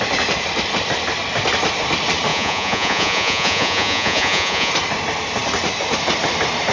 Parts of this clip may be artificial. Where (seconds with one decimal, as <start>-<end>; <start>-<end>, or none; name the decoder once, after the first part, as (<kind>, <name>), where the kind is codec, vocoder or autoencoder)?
2.3-4.7 (vocoder, Vocos)